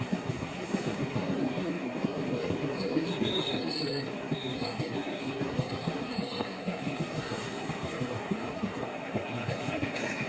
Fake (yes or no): yes